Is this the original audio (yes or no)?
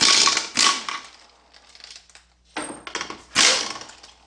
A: yes